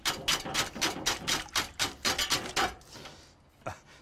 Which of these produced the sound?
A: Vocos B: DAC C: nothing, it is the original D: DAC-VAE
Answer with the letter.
C